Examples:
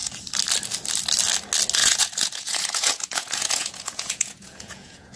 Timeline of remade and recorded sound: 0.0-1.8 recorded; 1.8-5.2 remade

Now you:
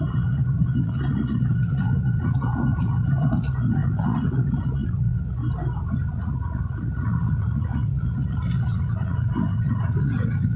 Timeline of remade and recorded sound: 0.0-5.4 remade; 5.4-6.1 recorded; 6.1-10.6 remade